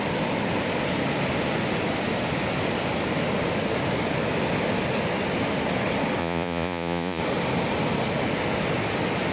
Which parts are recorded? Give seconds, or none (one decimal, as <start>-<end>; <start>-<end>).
0.0-6.2; 7.2-9.3